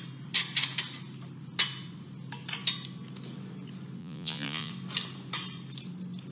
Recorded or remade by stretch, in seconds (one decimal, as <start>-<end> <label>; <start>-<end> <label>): 0.0-4.0 recorded; 4.0-4.7 remade; 4.7-6.3 recorded